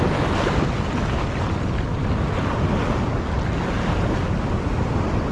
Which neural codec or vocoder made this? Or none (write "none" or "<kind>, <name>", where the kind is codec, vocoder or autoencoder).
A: none